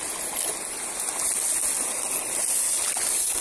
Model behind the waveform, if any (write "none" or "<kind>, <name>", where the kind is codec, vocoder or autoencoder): none